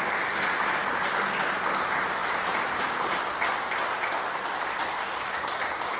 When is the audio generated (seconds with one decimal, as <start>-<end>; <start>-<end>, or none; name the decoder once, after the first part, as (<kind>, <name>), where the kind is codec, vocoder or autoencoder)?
2.2-2.8 (vocoder, BigVGAN v2); 4.8-6.0